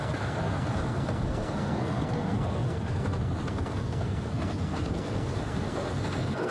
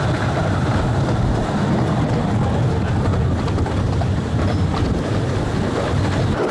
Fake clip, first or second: first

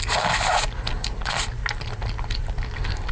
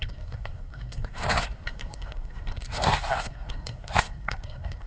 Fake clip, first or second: second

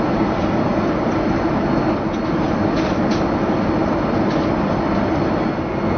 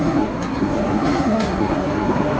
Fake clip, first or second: second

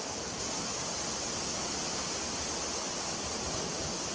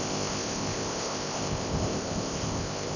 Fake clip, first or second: second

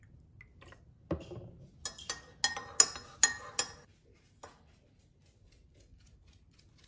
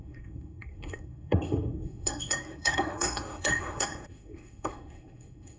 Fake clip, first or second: second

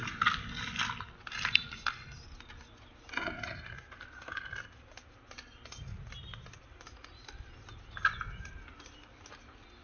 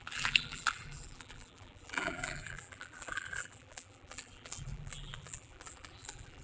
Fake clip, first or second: second